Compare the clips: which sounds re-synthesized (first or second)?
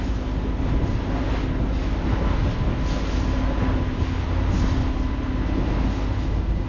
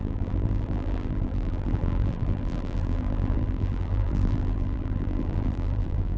second